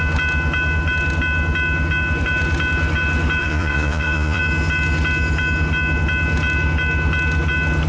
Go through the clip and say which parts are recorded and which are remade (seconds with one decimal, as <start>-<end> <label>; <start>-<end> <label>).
0.0-3.4 recorded; 3.4-4.4 remade; 4.4-7.9 recorded